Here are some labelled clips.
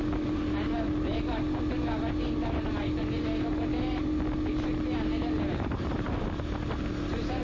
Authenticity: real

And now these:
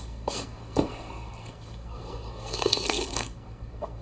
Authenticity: fake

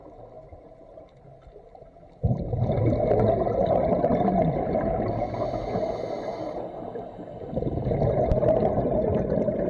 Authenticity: real